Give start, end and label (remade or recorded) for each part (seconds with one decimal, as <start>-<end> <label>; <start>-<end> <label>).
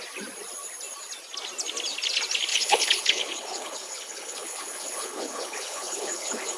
0.0-2.5 recorded; 2.5-6.6 remade